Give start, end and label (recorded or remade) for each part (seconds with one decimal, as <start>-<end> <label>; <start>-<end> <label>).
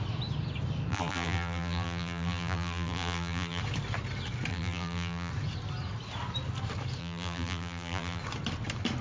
0.0-0.9 recorded; 0.9-3.6 remade; 3.6-4.5 recorded; 4.5-5.3 remade; 5.3-7.0 recorded; 7.0-8.2 remade; 8.2-9.0 recorded